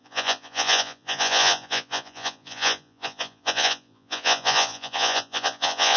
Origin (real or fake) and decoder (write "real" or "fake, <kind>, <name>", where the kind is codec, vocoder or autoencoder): fake, vocoder, Vocos